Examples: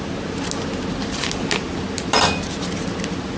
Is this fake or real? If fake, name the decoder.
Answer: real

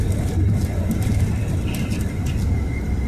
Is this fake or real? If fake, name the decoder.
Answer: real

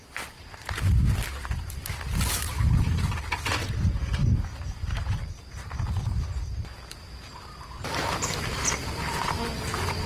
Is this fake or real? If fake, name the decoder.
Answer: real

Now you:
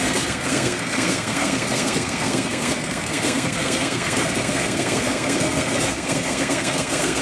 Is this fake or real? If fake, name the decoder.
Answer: fake, codec, SNAC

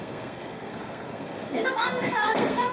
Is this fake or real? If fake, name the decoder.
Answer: fake, codec, SNAC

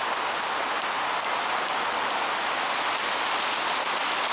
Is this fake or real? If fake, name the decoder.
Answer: real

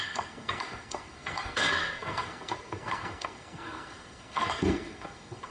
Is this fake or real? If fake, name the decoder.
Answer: fake, codec, SNAC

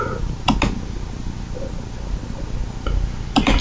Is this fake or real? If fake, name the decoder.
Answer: real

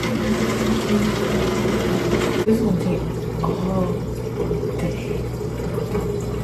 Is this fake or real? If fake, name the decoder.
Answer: real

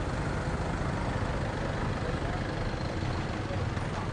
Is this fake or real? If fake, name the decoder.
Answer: real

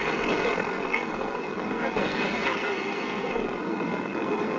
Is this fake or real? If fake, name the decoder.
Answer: fake, codec, SNAC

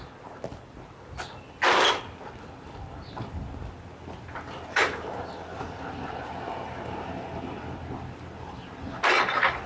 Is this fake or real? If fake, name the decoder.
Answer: real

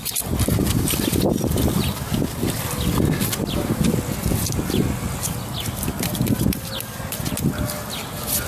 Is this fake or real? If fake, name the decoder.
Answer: real